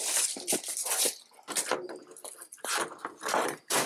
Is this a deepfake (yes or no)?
yes